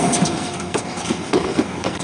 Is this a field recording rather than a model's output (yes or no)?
no